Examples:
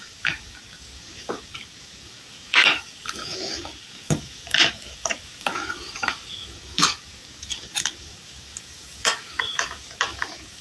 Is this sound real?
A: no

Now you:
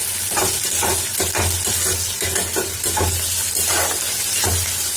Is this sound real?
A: yes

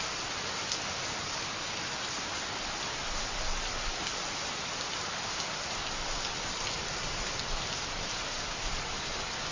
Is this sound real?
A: yes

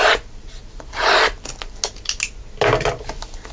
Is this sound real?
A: yes